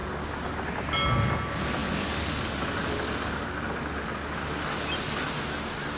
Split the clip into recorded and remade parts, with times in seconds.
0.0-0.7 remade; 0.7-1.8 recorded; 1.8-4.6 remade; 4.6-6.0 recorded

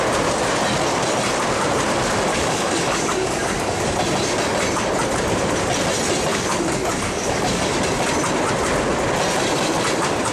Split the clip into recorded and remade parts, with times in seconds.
0.0-2.3 recorded; 2.3-3.8 remade; 3.8-6.3 recorded; 6.3-7.7 remade; 7.7-10.3 recorded

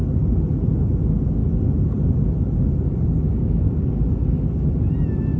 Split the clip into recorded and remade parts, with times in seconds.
0.0-3.4 recorded; 3.4-4.0 remade; 4.0-5.4 recorded

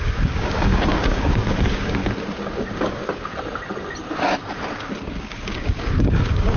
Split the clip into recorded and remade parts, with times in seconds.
0.0-2.0 remade; 2.0-2.5 recorded; 2.5-3.0 remade; 3.0-5.1 recorded; 5.1-6.6 remade

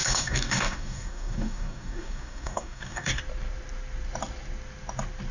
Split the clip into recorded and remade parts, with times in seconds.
0.0-3.2 remade; 3.2-5.3 recorded

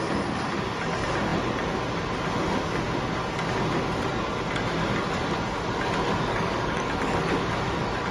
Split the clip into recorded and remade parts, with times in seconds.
0.0-6.3 recorded; 6.3-7.5 remade; 7.5-8.1 recorded

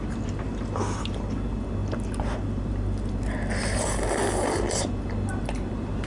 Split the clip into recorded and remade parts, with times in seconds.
0.0-6.1 recorded

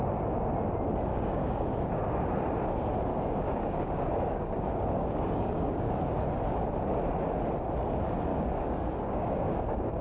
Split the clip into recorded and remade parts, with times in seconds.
0.0-1.1 recorded; 1.1-2.0 remade; 2.0-3.1 recorded; 3.1-6.0 remade; 6.0-8.3 recorded; 8.3-10.0 remade